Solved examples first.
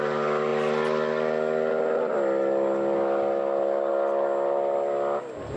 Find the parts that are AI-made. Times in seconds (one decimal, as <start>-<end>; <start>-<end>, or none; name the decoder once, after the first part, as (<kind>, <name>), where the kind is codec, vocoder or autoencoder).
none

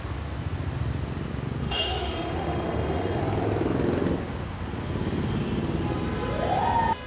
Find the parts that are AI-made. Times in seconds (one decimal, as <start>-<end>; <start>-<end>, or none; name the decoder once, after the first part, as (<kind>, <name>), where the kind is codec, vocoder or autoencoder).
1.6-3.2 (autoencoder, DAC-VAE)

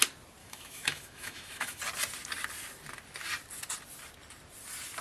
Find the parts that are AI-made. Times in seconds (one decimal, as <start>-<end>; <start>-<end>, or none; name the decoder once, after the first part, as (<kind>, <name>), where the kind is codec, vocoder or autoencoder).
0.4-1.8 (autoencoder, DAC-VAE)

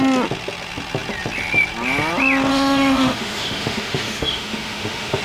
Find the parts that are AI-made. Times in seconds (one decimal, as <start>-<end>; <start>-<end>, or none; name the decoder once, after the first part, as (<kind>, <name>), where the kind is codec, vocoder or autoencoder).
2.5-5.2 (autoencoder, DAC-VAE)

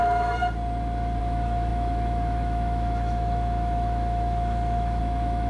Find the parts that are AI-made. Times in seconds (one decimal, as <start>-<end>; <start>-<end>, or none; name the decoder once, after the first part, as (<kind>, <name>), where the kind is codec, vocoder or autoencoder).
0.0-0.4 (autoencoder, DAC-VAE); 1.2-5.5